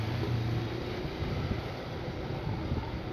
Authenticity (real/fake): real